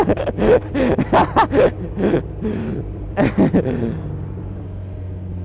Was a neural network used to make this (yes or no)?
no